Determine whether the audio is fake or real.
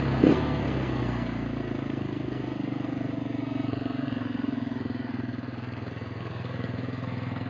fake